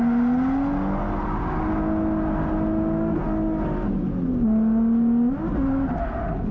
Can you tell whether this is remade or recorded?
recorded